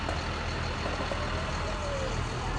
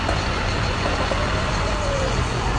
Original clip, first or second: first